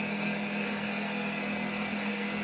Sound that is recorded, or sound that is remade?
remade